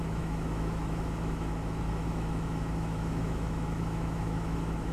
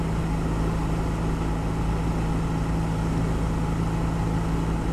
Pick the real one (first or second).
second